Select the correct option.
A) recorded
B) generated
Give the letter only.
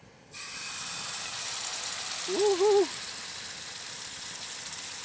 A